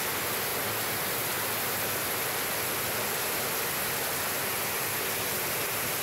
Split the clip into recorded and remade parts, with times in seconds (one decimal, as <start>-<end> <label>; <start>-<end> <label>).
0.0-6.0 recorded